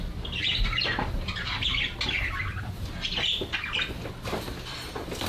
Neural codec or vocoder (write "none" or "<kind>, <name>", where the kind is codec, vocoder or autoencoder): none